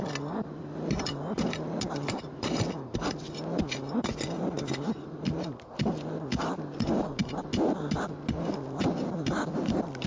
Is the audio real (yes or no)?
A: yes